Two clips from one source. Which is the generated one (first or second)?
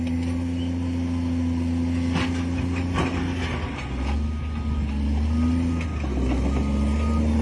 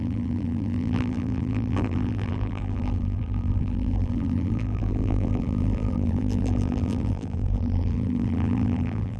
second